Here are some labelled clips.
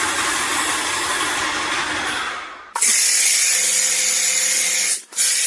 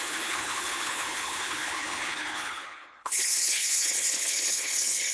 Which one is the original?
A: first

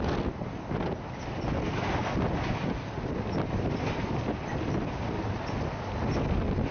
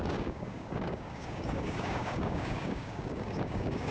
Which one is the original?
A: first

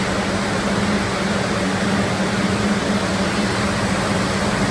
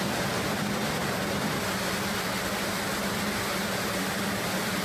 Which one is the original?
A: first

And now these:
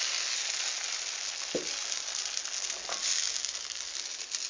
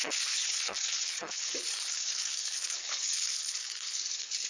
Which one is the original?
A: first